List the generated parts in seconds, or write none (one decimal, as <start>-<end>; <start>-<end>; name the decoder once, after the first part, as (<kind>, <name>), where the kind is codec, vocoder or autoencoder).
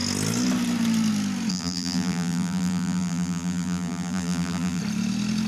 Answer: 1.5-4.8 (vocoder, BigVGAN v2)